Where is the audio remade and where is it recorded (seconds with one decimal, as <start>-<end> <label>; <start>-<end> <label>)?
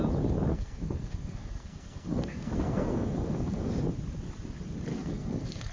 0.0-0.5 recorded; 0.5-3.7 remade; 3.7-4.9 recorded; 4.9-5.7 remade